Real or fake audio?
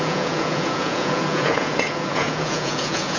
fake